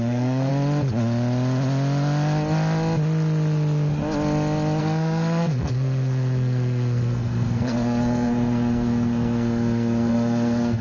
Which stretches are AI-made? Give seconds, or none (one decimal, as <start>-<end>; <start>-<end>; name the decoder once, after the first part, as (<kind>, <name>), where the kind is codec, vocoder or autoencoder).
0.0-0.5 (codec, SNAC); 4.8-10.8